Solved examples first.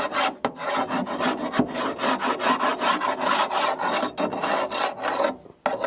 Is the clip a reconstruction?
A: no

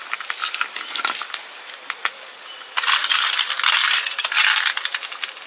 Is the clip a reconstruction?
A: no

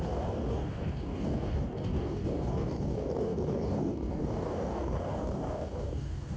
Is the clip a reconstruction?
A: yes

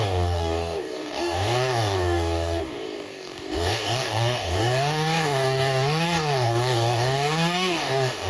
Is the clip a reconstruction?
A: yes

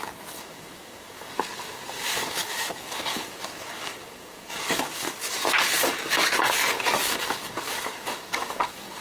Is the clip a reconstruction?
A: yes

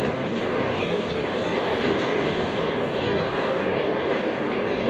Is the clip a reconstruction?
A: yes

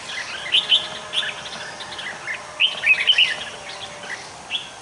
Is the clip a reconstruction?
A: no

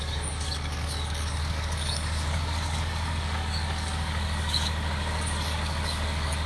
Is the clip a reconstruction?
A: yes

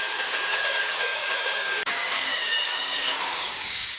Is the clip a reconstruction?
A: yes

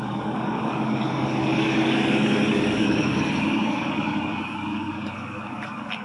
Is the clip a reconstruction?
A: yes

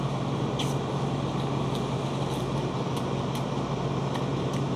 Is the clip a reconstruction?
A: no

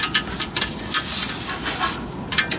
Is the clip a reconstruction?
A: no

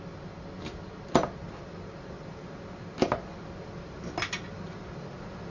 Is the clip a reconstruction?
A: no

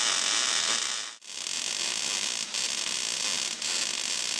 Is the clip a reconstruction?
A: no